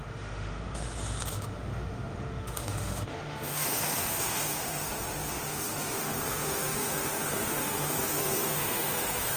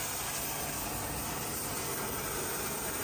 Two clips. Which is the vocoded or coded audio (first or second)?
first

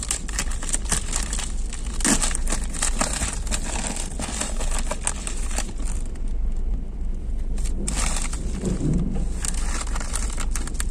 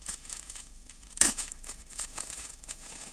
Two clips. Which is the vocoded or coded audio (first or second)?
second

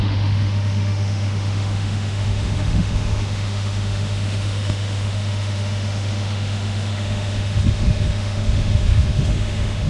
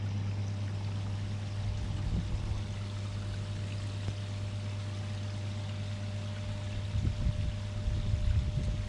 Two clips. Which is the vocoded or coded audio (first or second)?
first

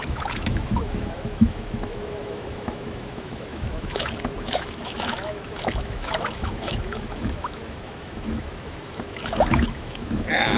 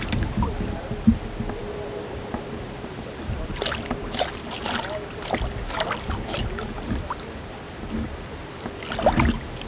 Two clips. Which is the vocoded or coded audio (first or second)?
first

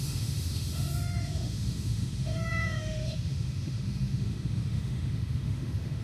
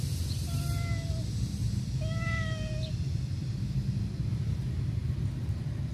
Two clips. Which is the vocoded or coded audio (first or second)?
first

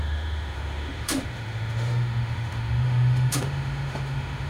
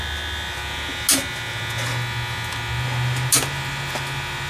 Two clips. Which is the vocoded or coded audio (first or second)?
first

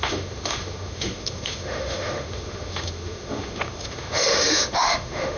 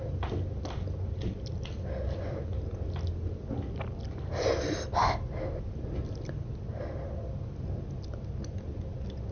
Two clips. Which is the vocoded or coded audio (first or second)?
first